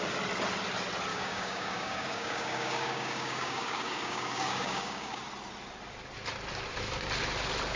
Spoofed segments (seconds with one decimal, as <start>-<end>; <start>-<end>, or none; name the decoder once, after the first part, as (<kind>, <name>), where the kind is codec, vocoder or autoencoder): 1.1-5.2 (codec, DAC)